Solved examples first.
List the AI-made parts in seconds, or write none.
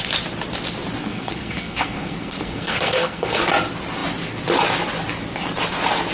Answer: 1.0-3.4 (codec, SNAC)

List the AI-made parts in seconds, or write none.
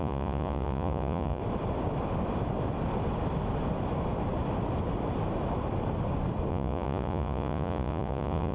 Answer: 0.0-1.4 (vocoder, Vocos); 6.5-8.5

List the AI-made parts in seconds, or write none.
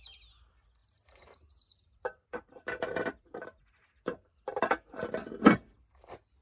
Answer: 0.8-4.6 (vocoder, BigVGAN v2)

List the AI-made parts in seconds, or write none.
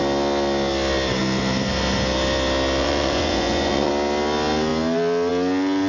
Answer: 2.8-3.9 (vocoder, Vocos)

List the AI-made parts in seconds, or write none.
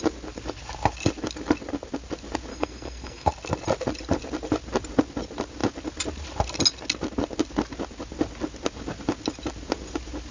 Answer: 2.5-3.3 (codec, SNAC)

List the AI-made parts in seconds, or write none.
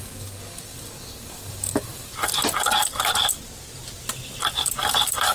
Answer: 0.0-2.1 (codec, DAC)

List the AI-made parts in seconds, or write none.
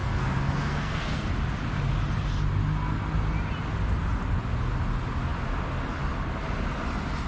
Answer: 0.0-1.3 (codec, SNAC)